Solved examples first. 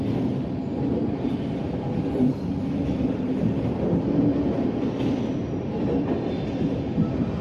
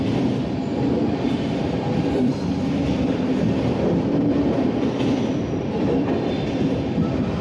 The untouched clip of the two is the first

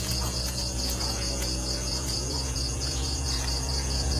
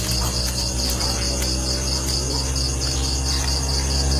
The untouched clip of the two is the second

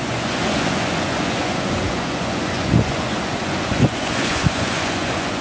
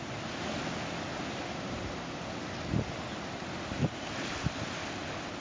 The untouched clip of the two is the second